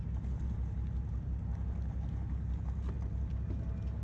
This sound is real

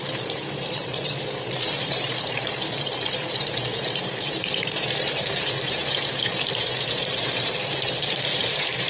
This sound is fake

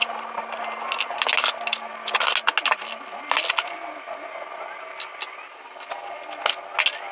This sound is real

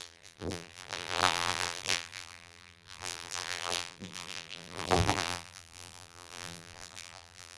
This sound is fake